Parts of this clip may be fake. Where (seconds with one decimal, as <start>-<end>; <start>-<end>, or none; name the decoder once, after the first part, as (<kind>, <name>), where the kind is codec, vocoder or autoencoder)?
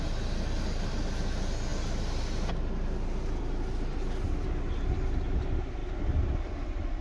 none